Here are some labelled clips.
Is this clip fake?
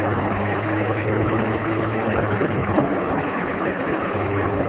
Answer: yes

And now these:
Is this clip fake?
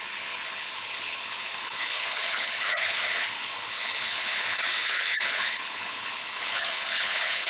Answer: yes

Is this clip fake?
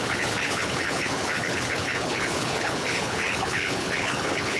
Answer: yes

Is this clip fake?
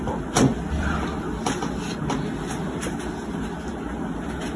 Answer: no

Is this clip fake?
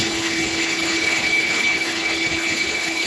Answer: yes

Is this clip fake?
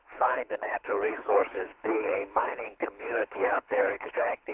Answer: yes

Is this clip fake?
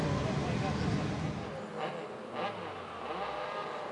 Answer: no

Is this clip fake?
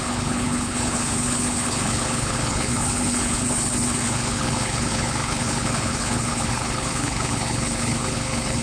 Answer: yes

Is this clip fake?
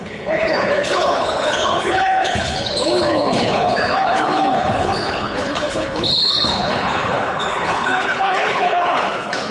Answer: yes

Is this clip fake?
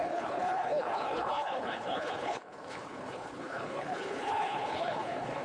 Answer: yes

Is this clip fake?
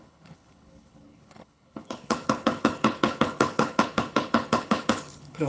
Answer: yes